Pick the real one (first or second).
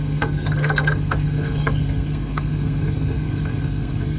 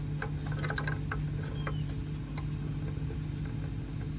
second